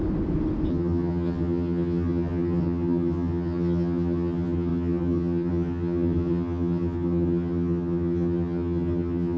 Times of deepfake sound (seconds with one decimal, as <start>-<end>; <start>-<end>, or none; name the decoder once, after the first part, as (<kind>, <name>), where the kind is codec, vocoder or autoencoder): 0.7-9.4 (vocoder, HiFi-GAN)